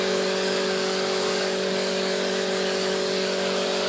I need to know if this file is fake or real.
fake